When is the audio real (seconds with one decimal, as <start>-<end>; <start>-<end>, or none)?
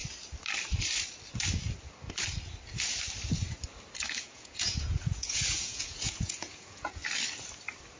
0.0-4.2; 7.0-8.0